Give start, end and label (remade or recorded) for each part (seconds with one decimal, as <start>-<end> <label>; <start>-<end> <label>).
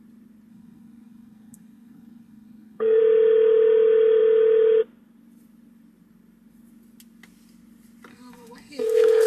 0.0-0.5 recorded; 0.5-3.0 remade; 3.0-8.1 recorded; 8.1-9.3 remade